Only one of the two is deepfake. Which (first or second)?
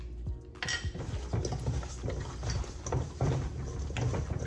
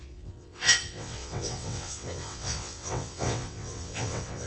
second